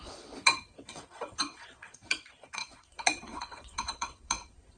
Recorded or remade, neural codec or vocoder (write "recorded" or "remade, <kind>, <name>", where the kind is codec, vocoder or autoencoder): remade, vocoder, WaveNeXt